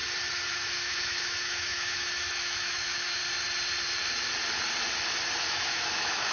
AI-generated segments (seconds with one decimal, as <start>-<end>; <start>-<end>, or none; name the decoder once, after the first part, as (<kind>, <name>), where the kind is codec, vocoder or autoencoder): 0.5-3.2 (autoencoder, DAC-VAE); 5.5-6.3